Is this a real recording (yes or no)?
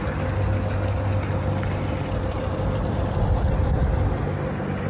yes